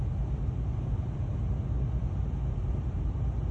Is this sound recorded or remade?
recorded